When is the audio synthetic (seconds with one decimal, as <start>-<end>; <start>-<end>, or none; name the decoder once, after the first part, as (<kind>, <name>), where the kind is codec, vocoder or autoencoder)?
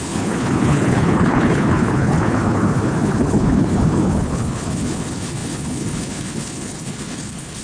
0.0-7.6 (codec, HILCodec)